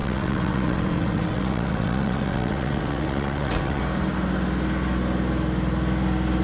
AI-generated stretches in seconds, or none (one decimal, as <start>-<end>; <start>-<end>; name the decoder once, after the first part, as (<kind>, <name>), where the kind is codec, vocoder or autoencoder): 0.0-3.8 (vocoder, WaveNeXt)